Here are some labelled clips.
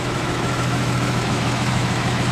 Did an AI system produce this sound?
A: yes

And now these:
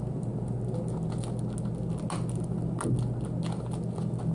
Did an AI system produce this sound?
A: no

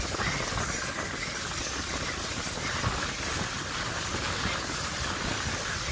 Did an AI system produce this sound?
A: no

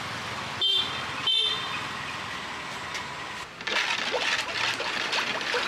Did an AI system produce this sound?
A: no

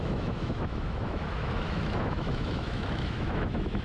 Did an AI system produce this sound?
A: yes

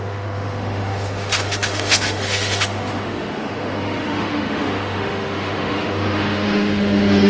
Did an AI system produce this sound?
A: yes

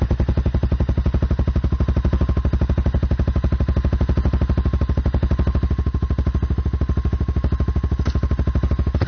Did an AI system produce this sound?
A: no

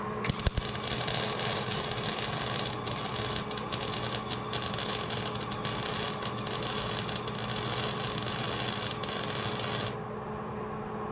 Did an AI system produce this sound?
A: no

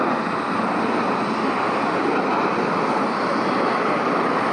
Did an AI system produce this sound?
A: no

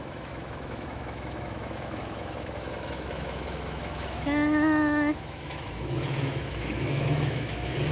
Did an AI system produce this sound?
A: yes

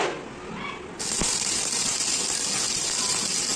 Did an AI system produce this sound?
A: no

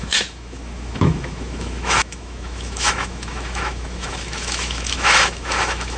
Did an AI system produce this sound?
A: yes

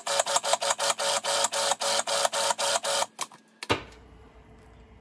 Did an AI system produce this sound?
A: no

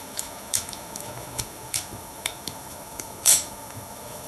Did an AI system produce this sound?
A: yes